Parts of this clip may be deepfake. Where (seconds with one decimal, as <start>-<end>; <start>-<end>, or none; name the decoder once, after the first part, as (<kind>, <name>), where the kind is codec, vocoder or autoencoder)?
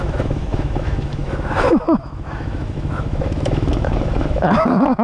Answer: 0.0-5.0 (autoencoder, DAC-VAE)